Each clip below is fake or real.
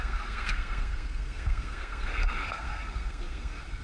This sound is fake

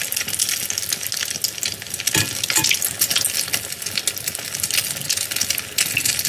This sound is real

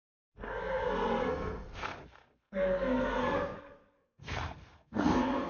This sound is fake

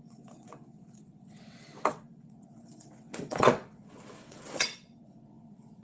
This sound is fake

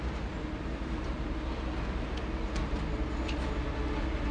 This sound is real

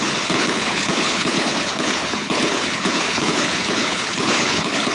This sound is fake